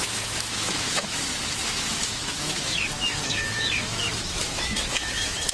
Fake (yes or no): yes